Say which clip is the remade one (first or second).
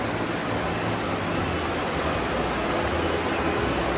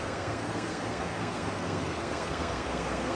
second